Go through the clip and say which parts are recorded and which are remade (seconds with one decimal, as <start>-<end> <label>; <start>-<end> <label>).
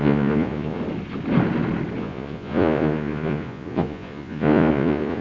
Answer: 0.0-0.8 remade; 0.8-2.0 recorded; 2.0-5.2 remade